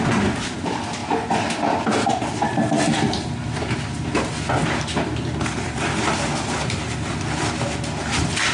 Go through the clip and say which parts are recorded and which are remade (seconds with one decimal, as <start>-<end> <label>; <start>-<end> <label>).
0.0-1.0 remade; 1.0-1.5 recorded; 1.5-8.5 remade

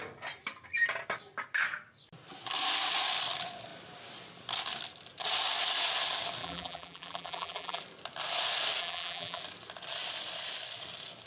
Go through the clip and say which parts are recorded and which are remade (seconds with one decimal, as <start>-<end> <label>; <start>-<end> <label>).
0.0-6.4 recorded; 6.4-7.8 remade; 7.8-8.8 recorded; 8.8-9.4 remade; 9.4-11.3 recorded

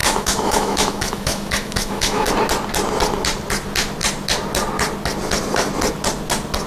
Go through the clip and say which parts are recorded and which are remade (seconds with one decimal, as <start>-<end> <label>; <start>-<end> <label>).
0.0-2.3 remade; 2.3-6.7 recorded

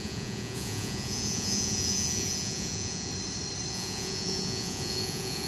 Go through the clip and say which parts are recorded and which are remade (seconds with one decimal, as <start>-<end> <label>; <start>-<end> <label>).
0.0-3.1 remade; 3.1-3.7 recorded; 3.7-5.5 remade

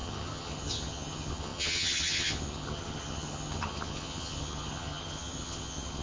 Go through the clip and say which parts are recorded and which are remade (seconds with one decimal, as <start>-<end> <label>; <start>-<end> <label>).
0.0-6.0 remade

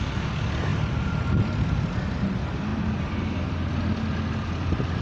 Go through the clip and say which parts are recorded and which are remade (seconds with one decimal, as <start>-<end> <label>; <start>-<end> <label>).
0.0-5.0 recorded